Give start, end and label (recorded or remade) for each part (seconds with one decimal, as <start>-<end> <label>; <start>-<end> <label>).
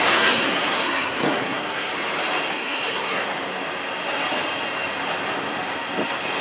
0.0-1.9 remade; 1.9-2.5 recorded; 2.5-3.3 remade; 3.3-6.4 recorded